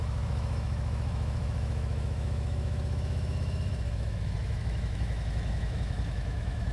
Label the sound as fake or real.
fake